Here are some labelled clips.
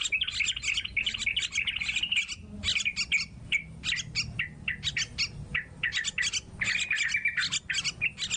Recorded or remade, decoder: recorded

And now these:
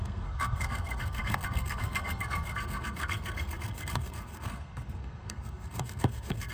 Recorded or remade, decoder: remade, codec, SNAC